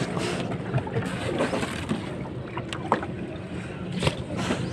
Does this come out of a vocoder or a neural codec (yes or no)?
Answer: no